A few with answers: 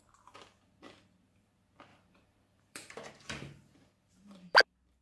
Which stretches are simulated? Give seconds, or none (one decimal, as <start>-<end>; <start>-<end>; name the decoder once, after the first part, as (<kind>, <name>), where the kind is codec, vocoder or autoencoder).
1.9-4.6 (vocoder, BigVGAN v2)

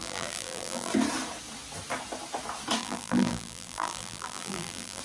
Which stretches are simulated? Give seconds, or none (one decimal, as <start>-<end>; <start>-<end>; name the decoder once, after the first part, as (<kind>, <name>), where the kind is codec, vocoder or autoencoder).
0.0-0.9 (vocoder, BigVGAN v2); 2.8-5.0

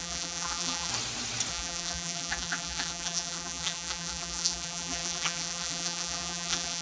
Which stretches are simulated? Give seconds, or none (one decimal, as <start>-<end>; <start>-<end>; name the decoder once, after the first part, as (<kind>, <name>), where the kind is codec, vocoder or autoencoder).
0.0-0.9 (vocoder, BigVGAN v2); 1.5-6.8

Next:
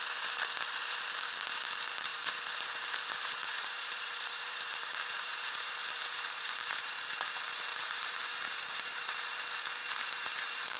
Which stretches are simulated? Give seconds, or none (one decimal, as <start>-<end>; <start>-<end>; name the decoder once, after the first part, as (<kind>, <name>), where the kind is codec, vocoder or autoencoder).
2.1-6.9 (vocoder, BigVGAN v2); 7.7-9.0; 9.8-10.8

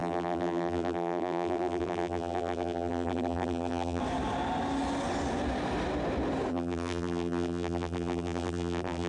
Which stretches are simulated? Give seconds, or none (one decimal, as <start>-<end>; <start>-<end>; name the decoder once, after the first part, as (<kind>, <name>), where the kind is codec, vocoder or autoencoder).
0.0-4.0 (vocoder, BigVGAN v2); 6.5-9.1

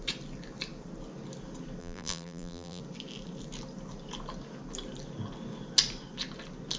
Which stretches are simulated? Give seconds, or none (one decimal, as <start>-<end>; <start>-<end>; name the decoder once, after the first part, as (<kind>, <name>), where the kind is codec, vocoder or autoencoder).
1.8-2.8 (vocoder, BigVGAN v2)

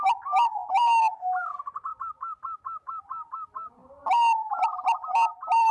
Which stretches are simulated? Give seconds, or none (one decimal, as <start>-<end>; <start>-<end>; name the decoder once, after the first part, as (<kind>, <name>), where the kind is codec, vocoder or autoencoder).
0.0-0.8 (vocoder, BigVGAN v2); 1.5-1.9; 5.3-5.7